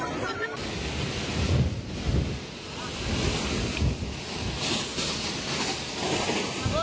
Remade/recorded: recorded